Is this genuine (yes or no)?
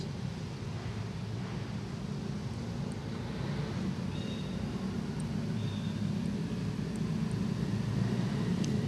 yes